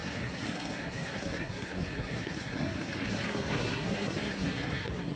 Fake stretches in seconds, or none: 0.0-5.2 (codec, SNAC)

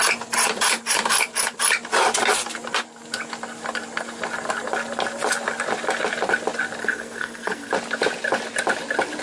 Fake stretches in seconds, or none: 6.8-7.7 (codec, SNAC)

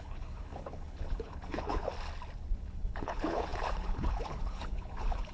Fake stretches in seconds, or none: 0.0-1.9 (codec, HILCodec); 2.5-5.3

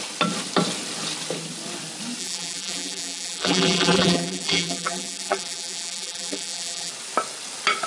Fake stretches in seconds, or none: 2.2-6.9 (vocoder, BigVGAN v2)

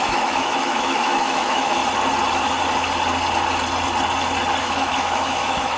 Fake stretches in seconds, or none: 0.0-1.8 (autoencoder, DAC-VAE); 4.6-5.8

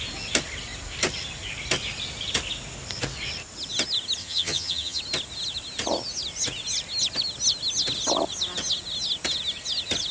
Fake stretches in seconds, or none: 4.2-5.0 (vocoder, HiFi-GAN)

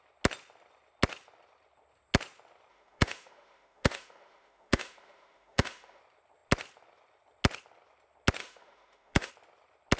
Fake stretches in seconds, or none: 2.7-6.0 (autoencoder, DAC-VAE); 8.4-9.3